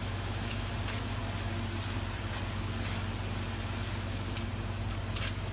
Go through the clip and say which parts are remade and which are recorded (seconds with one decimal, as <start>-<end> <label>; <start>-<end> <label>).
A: 0.0-0.7 remade; 0.7-5.5 recorded